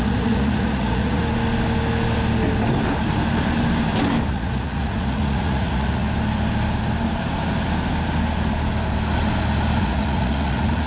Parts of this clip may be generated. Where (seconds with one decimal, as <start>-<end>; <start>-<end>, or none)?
0.0-1.2; 4.3-6.0; 9.8-10.9